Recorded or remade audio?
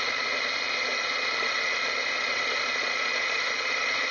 recorded